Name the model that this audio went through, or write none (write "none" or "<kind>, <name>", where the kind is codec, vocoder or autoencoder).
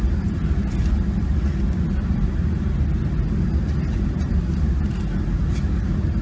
none